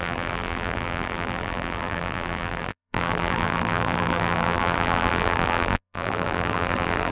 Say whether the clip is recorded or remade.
remade